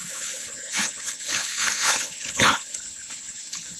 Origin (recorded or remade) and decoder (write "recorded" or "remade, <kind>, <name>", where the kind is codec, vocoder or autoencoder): remade, codec, HILCodec